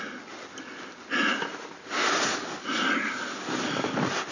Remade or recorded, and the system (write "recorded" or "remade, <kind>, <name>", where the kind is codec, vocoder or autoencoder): recorded